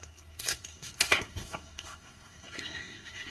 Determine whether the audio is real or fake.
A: fake